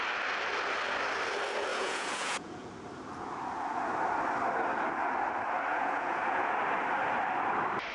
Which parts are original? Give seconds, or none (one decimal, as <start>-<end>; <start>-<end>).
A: 0.0-1.7; 2.7-5.7; 6.5-7.9